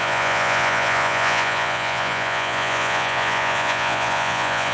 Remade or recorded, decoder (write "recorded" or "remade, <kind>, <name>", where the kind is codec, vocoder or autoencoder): remade, vocoder, Vocos